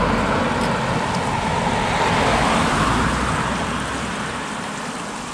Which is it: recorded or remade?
recorded